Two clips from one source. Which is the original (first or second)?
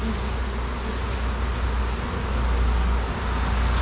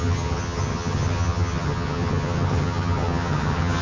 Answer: first